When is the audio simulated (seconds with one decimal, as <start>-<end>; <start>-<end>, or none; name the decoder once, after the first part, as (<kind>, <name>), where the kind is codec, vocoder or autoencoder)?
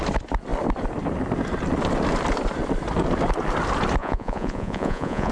4.0-5.3 (vocoder, Vocos)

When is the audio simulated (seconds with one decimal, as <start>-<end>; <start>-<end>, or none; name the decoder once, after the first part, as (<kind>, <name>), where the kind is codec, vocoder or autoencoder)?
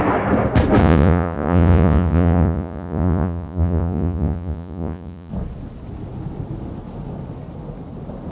0.8-5.3 (vocoder, Vocos)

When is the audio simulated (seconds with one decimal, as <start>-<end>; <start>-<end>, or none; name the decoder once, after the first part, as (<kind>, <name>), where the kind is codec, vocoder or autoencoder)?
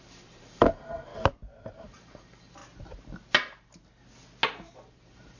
0.0-1.1 (vocoder, BigVGAN v2); 1.7-2.6; 4.9-5.4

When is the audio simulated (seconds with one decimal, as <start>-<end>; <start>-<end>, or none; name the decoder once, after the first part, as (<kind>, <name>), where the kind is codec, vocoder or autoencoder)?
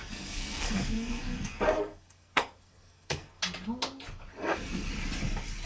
0.0-3.4 (codec, SNAC); 4.4-4.9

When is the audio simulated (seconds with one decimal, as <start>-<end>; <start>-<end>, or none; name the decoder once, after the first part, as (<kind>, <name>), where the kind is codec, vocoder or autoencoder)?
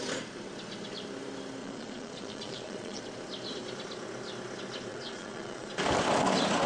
1.6-3.0 (vocoder, Vocos); 4.9-5.7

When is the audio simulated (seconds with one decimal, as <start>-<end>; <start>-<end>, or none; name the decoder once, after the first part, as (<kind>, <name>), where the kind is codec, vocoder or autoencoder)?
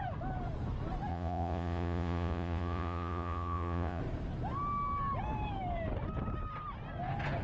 1.1-4.0 (vocoder, Vocos)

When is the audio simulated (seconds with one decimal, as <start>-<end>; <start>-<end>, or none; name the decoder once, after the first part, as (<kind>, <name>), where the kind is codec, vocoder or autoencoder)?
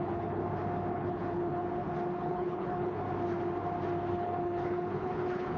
0.0-0.4 (codec, HILCodec); 0.9-1.6; 2.2-3.0; 4.1-5.6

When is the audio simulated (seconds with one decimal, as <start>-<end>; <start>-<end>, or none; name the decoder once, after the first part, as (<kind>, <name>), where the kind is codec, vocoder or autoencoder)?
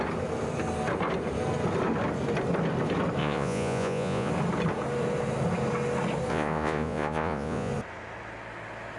3.2-4.3 (vocoder, Vocos); 6.3-7.7